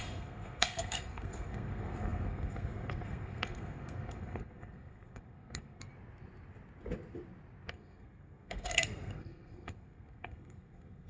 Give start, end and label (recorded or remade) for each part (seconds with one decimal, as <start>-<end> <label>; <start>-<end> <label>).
0.0-5.9 remade; 5.9-7.7 recorded; 7.7-11.1 remade